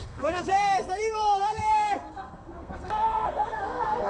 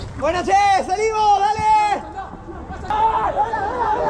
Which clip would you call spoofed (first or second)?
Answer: first